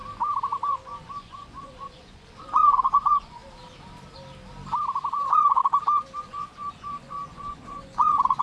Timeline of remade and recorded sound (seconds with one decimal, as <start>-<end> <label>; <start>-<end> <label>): 0.0-0.7 recorded; 0.7-3.4 remade; 3.4-5.1 recorded; 5.1-5.6 remade; 5.6-6.2 recorded; 6.2-8.4 remade